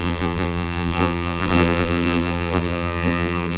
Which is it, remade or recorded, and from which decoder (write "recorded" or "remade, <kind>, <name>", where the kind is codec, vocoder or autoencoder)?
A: remade, vocoder, BigVGAN v2